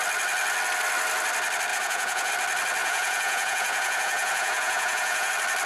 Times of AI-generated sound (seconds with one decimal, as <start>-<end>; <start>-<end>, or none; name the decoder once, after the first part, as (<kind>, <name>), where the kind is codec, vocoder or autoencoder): 1.7-2.3 (vocoder, Vocos); 2.8-5.3